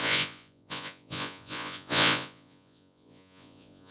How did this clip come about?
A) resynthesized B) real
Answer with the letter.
A